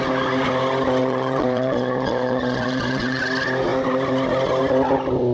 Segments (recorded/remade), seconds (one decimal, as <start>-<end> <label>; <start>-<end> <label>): 0.0-1.0 recorded; 1.0-3.2 remade; 3.2-5.3 recorded